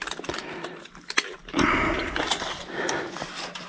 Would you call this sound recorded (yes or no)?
yes